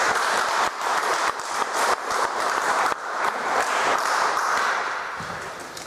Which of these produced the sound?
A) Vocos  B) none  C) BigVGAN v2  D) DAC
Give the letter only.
C